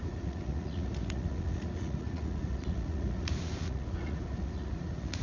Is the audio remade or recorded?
remade